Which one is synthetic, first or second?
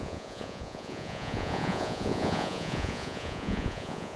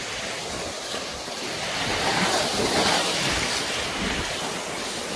first